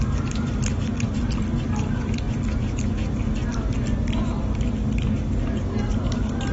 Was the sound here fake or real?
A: real